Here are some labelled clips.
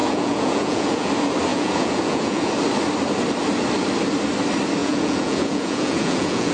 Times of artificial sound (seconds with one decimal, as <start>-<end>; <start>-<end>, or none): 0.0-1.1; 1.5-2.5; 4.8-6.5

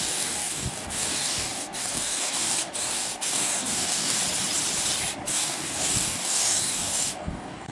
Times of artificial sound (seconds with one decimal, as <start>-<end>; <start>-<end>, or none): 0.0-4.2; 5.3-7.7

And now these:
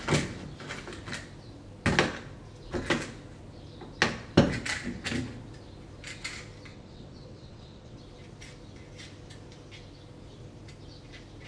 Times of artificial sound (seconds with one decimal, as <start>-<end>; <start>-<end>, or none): 6.7-8.0